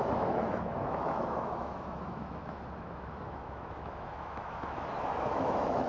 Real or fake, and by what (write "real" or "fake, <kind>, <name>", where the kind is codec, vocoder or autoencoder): fake, autoencoder, DAC-VAE